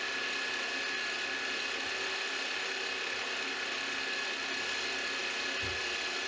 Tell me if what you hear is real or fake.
real